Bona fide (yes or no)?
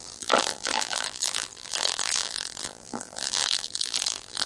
no